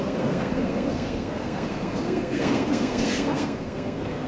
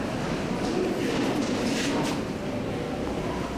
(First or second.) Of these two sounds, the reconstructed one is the first